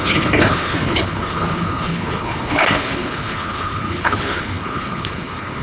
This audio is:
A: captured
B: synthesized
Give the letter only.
B